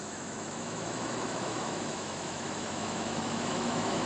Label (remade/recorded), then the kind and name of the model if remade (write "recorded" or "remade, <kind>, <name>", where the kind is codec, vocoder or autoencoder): remade, autoencoder, DAC-VAE